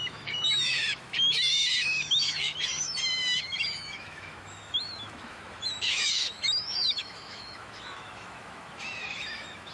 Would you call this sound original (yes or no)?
no